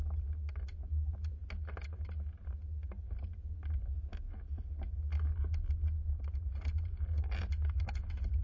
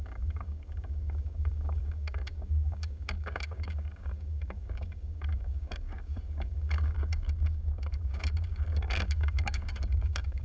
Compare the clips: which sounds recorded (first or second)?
first